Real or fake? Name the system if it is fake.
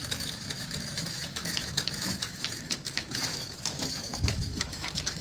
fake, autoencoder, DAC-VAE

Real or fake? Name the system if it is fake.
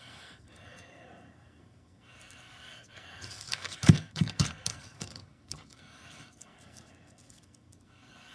fake, codec, SNAC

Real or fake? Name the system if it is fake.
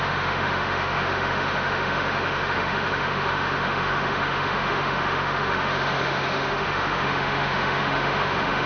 fake, autoencoder, DAC-VAE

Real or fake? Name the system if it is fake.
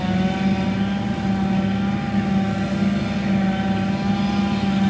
real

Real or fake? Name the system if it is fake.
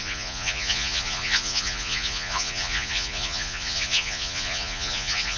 fake, vocoder, Vocos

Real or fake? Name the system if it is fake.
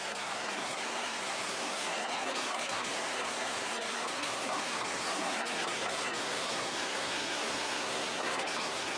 fake, codec, SNAC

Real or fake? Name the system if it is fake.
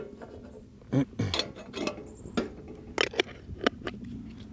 real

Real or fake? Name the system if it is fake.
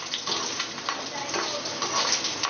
real